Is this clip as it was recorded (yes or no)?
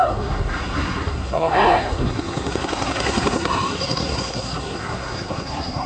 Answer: no